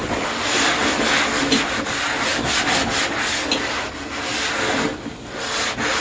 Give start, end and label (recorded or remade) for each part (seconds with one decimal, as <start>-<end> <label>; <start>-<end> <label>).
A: 0.0-0.9 remade; 0.9-6.0 recorded